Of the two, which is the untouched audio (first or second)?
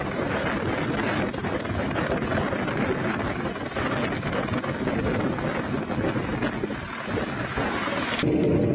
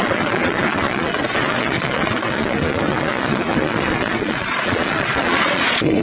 first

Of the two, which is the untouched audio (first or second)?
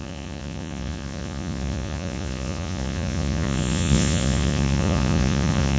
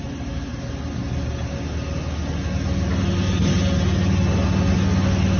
second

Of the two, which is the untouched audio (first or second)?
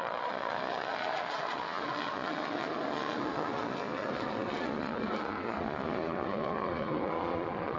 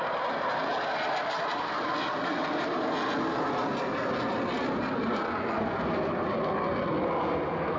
second